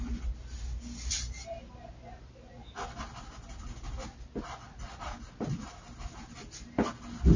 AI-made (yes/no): no